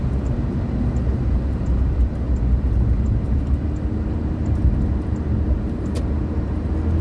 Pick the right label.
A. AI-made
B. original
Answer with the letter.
B